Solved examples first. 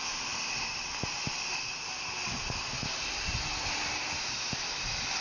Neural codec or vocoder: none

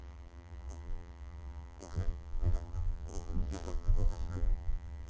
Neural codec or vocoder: vocoder, BigVGAN v2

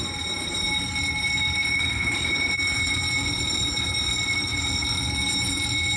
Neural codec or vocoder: vocoder, BigVGAN v2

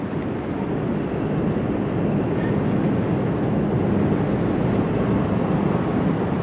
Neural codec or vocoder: none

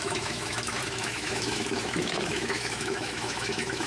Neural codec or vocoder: autoencoder, DAC-VAE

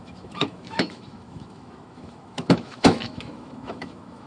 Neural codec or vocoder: autoencoder, DAC-VAE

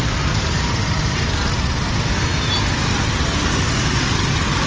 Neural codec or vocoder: none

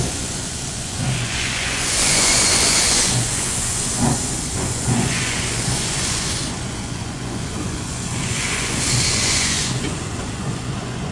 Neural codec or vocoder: vocoder, Vocos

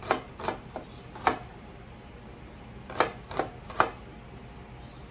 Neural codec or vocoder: none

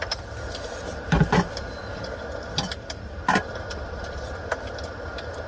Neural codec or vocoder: none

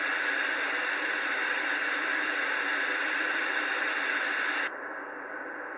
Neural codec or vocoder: none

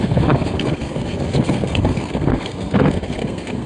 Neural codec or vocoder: codec, SNAC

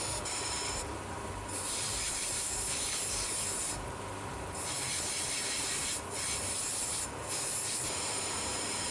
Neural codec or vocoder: vocoder, BigVGAN v2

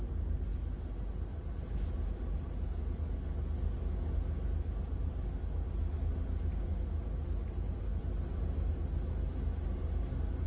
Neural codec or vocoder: none